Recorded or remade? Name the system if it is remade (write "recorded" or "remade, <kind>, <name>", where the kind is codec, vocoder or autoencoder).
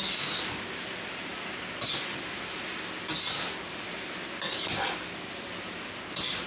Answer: recorded